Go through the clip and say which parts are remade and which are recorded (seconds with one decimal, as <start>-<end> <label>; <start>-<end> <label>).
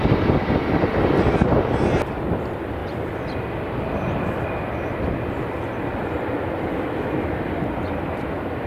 0.0-8.7 recorded